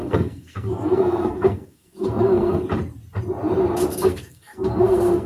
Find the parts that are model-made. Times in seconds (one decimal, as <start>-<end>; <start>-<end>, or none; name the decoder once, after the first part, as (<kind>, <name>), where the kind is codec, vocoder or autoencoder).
0.0-2.6 (codec, SNAC); 3.9-5.3